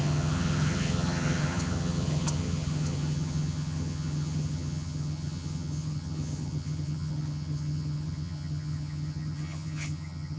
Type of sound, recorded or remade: remade